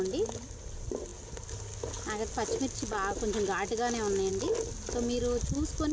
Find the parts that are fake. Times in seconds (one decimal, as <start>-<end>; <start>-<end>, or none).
none